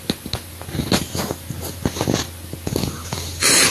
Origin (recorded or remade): recorded